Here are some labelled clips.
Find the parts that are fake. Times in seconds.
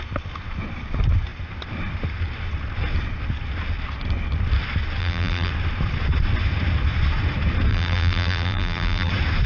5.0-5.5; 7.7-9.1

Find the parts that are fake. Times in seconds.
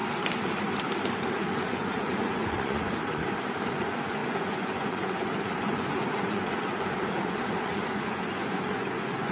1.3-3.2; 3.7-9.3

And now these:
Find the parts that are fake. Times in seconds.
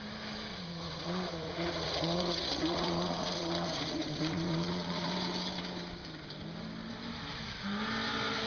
0.5-5.1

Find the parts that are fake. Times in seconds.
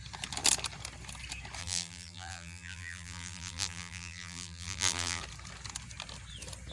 1.6-5.2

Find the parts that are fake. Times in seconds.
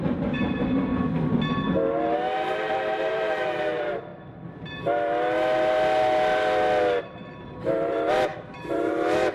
0.0-0.9; 2.5-4.1; 7.0-9.3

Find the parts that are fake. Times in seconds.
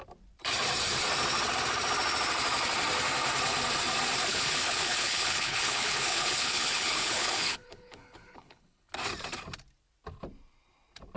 4.3-8.9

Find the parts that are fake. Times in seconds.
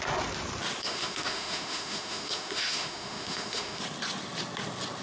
0.8-3.8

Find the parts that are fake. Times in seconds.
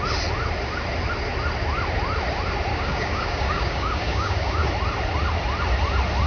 2.7-4.7